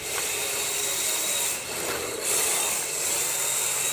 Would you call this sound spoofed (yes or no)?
no